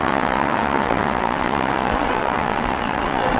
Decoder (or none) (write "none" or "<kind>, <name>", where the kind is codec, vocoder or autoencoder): vocoder, WaveNeXt